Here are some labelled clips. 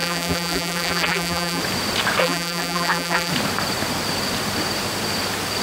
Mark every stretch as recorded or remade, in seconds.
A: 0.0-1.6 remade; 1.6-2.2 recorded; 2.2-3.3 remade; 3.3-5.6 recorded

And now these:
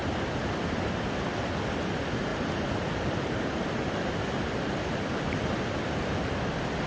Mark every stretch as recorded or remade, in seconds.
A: 0.0-2.3 recorded; 2.3-6.0 remade; 6.0-6.9 recorded

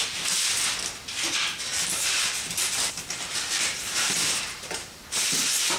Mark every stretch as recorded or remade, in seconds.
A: 0.0-1.7 recorded; 1.7-5.2 remade; 5.2-5.8 recorded

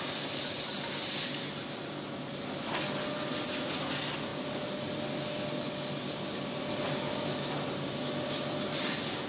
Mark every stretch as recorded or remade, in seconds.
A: 0.0-9.3 recorded

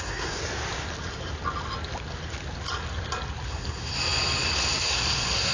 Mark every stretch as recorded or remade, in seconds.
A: 0.0-0.4 remade; 0.4-3.5 recorded; 3.5-3.9 remade; 3.9-4.8 recorded; 4.8-5.5 remade

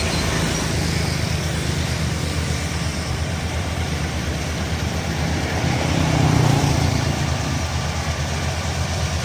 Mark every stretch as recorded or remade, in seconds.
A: 0.0-2.9 recorded; 2.9-7.5 remade; 7.5-9.2 recorded

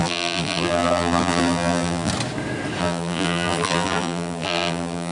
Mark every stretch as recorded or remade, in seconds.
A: 0.0-2.1 remade; 2.1-2.8 recorded; 2.8-5.1 remade

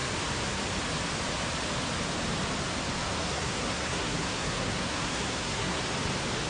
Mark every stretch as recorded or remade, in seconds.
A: 0.0-3.2 recorded; 3.2-5.8 remade; 5.8-6.5 recorded